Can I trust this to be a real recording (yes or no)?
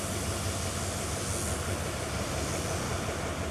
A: yes